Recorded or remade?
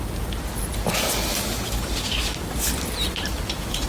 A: recorded